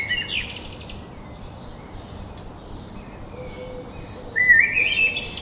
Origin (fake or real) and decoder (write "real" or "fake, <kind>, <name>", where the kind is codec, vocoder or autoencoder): real